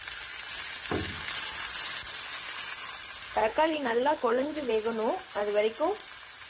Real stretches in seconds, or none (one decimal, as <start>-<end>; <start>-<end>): 0.0-3.4; 4.7-6.5